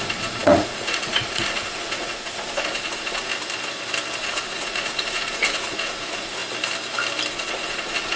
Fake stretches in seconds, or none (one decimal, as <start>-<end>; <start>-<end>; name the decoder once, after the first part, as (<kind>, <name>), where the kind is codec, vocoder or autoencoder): 0.0-3.3 (vocoder, Vocos); 4.2-6.4; 7.3-8.2